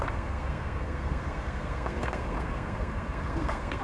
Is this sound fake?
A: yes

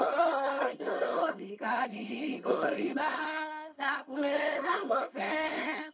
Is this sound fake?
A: yes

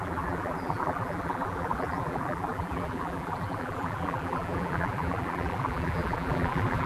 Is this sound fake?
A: yes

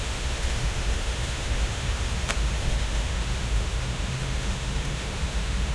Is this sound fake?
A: yes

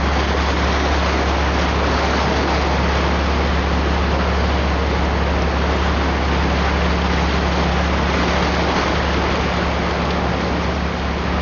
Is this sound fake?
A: no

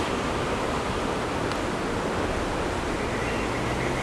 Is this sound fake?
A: no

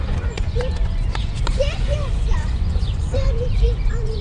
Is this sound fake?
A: yes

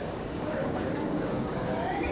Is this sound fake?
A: yes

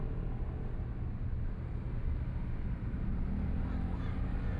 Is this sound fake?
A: no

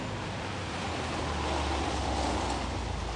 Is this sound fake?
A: no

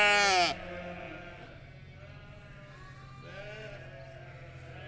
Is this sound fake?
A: no